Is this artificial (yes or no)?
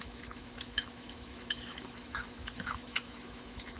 yes